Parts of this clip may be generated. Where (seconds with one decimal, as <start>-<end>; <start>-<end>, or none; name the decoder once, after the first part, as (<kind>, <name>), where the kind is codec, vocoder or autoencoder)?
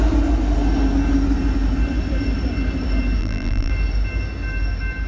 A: 3.2-3.7 (vocoder, BigVGAN v2)